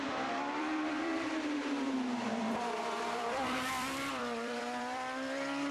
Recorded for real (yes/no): no